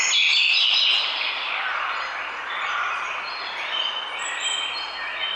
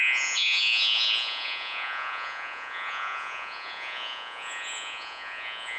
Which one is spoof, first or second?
second